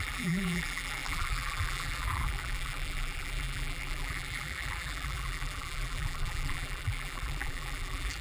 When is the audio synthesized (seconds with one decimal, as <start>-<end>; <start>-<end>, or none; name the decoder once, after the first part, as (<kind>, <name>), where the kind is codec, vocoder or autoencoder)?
0.0-8.2 (vocoder, BigVGAN v2)